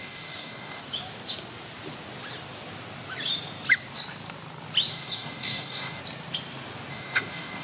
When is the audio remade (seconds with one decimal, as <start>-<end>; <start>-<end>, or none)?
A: 0.0-0.8; 4.9-6.0; 6.9-7.6